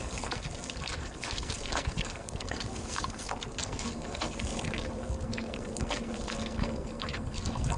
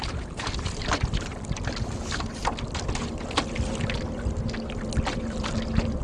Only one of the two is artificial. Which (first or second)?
first